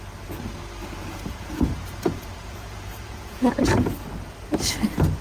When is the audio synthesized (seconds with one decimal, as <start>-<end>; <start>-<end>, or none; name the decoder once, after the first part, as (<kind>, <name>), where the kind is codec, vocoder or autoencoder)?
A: 0.8-3.9 (vocoder, Vocos)